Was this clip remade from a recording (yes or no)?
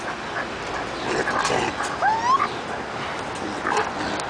no